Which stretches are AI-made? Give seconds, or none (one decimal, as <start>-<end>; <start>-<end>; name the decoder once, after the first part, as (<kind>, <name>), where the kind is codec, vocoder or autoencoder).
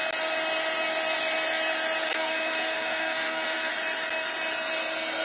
2.1-3.7 (codec, SNAC)